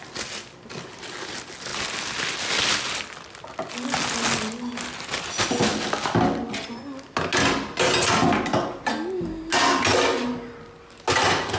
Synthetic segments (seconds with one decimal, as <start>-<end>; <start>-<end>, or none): none